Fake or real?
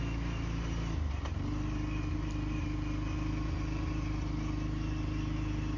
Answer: real